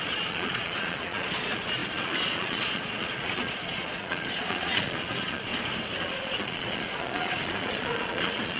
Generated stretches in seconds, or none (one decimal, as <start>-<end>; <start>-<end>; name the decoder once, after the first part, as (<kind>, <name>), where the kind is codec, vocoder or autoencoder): 0.0-5.5 (vocoder, Vocos); 6.0-8.6